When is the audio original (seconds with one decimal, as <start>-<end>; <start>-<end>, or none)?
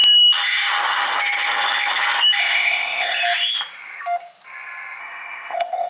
0.0-2.4; 3.2-5.0